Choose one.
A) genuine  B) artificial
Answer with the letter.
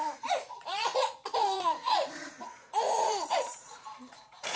B